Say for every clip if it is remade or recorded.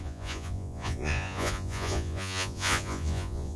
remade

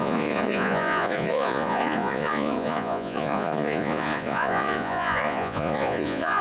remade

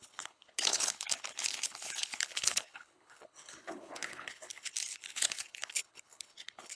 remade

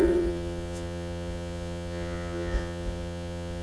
remade